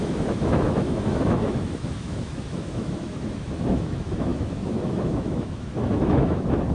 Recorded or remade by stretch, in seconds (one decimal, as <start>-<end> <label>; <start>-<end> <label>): 0.0-6.7 remade